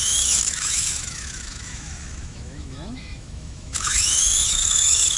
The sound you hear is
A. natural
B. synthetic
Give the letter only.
B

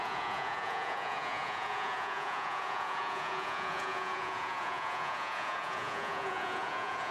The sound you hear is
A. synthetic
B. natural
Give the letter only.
A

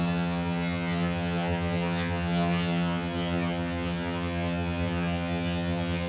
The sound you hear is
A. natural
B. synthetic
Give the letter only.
B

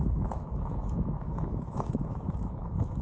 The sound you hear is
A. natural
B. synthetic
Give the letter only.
B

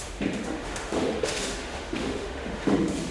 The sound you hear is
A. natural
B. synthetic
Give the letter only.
B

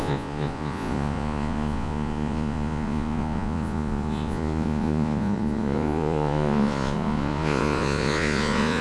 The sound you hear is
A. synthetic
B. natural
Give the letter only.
A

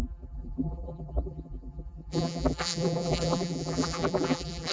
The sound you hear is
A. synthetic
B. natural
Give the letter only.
A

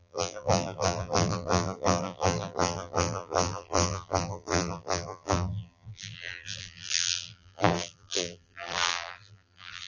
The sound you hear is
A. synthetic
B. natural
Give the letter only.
A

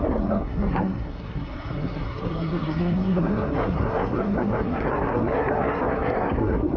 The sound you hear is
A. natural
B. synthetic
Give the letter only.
B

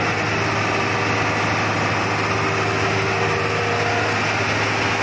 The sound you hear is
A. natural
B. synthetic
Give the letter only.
A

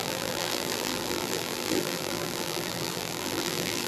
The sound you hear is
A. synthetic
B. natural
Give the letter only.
A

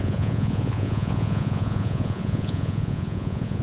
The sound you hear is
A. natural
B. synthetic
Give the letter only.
B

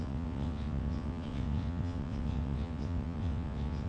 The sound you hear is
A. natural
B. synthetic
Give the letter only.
B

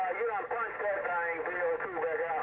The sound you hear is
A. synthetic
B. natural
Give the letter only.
B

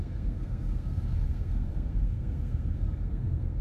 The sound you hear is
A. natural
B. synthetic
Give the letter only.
B